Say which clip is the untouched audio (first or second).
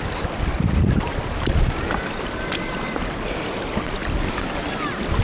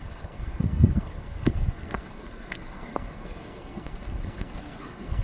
first